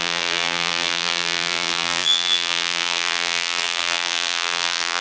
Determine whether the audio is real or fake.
fake